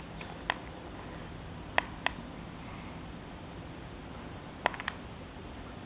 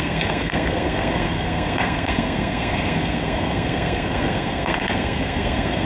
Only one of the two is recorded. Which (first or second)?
first